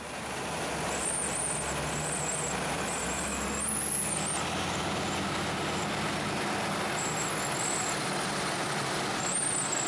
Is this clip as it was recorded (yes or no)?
yes